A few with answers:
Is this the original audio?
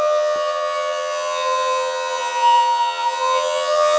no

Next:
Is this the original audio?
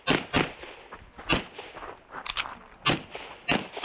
yes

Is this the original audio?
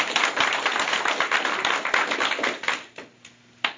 yes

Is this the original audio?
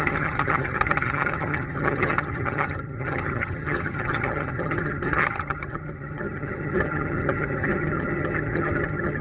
no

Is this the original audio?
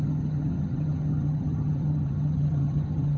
no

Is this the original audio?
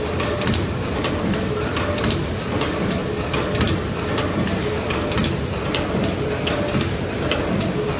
yes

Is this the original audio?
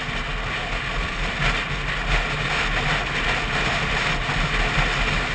yes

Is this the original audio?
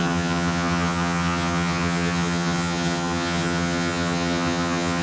no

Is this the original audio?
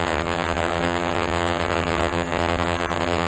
no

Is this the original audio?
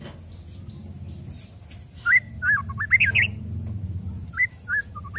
yes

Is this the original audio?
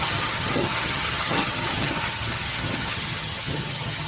no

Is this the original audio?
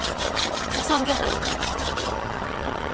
no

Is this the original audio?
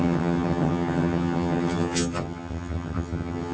no